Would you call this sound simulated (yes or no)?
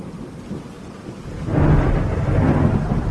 no